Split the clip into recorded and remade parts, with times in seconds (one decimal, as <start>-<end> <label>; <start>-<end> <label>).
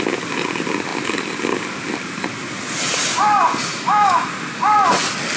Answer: 0.0-3.7 recorded; 3.7-4.3 remade; 4.3-5.4 recorded